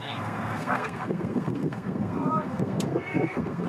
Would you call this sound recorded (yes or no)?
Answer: no